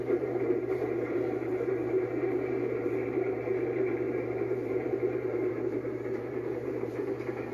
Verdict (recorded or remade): remade